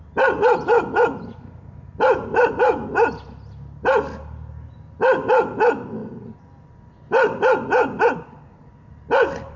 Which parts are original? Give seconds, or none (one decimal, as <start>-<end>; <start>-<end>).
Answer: 0.0-9.6